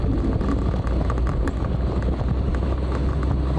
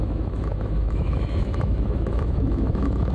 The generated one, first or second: second